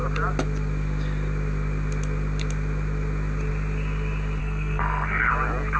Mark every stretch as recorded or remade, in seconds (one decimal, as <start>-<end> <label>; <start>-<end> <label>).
0.0-4.4 recorded; 4.4-5.3 remade; 5.3-5.8 recorded